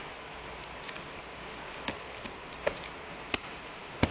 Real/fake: real